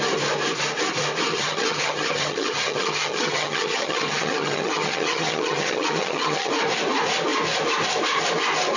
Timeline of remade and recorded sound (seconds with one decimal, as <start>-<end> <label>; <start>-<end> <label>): 0.0-1.3 recorded; 1.3-6.5 remade; 6.5-8.8 recorded